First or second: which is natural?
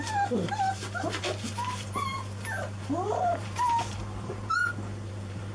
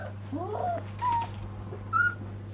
second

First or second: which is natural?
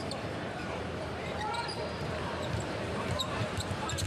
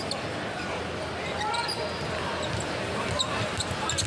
second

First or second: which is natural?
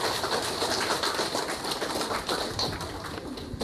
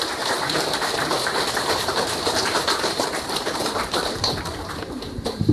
first